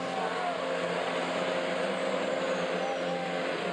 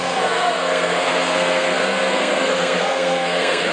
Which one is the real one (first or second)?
first